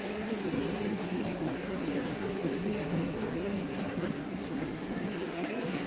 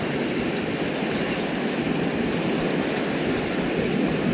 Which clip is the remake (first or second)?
first